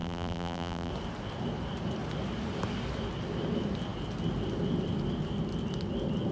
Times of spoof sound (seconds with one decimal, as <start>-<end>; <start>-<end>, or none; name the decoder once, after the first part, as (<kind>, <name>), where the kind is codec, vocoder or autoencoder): 0.0-0.9 (vocoder, BigVGAN v2)